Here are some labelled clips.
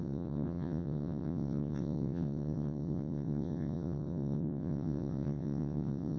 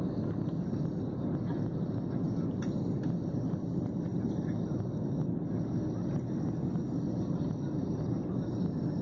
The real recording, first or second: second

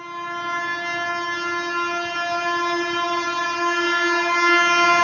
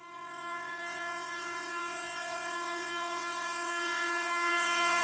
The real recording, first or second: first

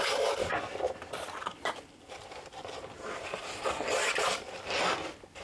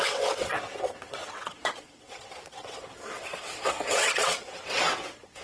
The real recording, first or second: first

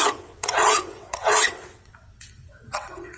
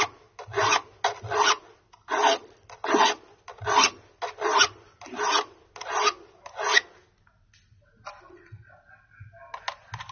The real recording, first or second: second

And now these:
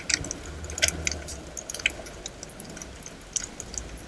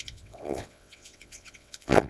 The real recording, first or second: first